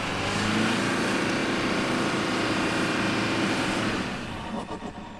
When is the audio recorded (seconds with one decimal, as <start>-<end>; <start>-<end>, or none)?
0.0-1.4; 2.3-5.2